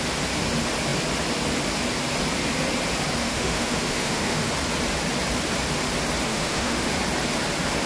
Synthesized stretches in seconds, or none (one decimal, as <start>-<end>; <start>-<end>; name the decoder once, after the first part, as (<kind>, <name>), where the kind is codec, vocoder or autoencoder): 3.2-4.5 (autoencoder, DAC-VAE); 6.3-6.9